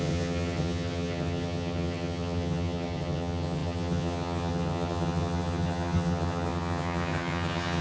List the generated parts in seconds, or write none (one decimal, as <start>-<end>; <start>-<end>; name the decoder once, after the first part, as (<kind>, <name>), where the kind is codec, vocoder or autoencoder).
0.0-7.8 (vocoder, HiFi-GAN)